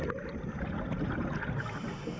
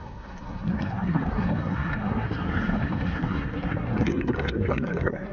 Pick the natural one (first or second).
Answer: first